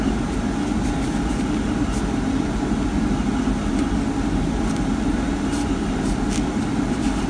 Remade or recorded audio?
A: recorded